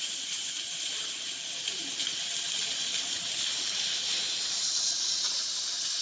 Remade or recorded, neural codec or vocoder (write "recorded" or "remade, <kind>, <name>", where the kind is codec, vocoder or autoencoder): recorded